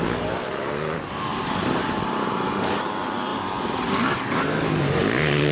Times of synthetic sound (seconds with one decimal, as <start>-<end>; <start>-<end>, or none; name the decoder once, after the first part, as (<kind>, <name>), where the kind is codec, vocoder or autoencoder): 1.3-2.9 (vocoder, BigVGAN v2); 3.3-4.4